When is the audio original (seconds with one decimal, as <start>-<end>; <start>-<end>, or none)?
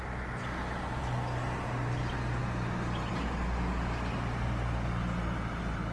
0.0-5.9